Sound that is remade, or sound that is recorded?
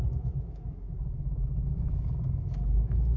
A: remade